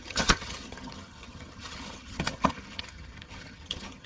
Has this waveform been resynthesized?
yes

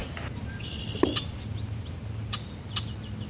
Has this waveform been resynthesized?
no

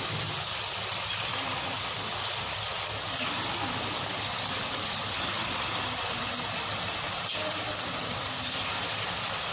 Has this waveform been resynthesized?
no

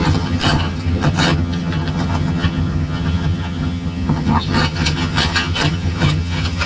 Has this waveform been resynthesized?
yes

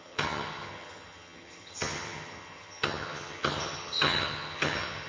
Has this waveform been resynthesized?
yes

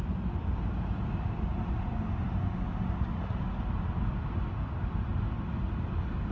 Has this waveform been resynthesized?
no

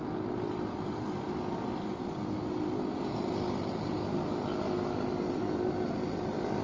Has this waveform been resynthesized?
no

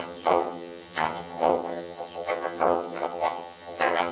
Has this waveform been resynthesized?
yes